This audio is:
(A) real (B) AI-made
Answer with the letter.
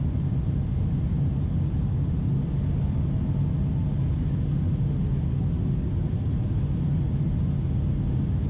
A